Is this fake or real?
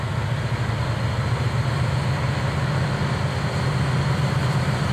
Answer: real